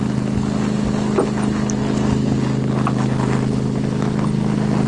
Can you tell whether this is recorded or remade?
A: recorded